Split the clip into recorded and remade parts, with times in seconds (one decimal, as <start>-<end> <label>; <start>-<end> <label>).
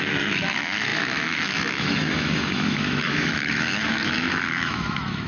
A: 0.0-5.3 remade